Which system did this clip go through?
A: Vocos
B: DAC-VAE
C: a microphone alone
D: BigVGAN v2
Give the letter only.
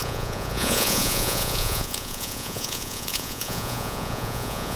A